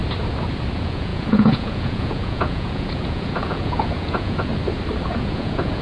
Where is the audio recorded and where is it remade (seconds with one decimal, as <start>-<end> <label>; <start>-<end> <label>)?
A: 0.0-0.7 recorded; 0.7-4.5 remade; 4.5-5.0 recorded; 5.0-5.8 remade